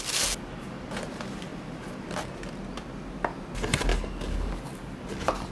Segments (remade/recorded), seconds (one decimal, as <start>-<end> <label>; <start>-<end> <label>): 0.0-3.9 recorded; 3.9-4.6 remade; 4.6-5.5 recorded